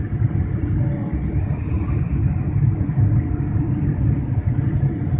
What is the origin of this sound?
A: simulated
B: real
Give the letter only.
B